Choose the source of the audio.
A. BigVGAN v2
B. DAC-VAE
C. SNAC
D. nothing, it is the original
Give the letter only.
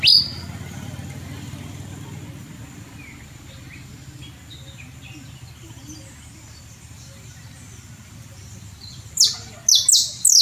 D